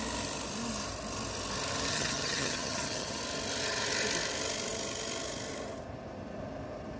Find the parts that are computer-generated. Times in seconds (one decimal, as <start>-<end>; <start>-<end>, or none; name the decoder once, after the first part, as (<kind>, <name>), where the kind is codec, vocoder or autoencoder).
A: 1.9-3.2 (vocoder, HiFi-GAN)